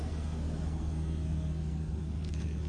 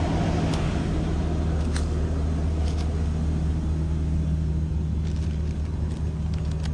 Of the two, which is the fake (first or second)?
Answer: first